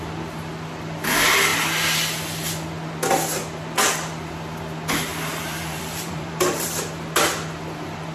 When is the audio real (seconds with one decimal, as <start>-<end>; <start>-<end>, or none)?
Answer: 0.0-5.1; 6.9-8.1